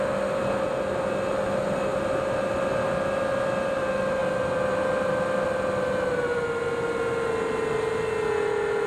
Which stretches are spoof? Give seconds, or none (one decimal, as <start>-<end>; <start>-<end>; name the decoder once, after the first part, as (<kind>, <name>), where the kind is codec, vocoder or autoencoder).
none